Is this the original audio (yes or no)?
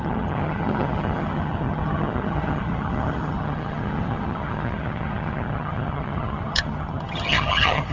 no